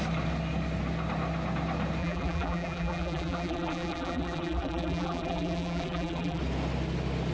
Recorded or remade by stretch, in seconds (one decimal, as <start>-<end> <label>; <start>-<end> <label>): 0.0-2.0 recorded; 2.0-6.4 remade; 6.4-7.3 recorded